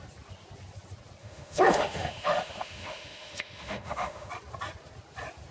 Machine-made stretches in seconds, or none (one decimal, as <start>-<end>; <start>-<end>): 1.2-4.3